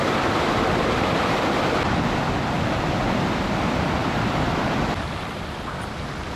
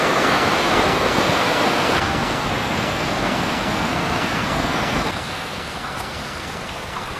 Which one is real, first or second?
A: first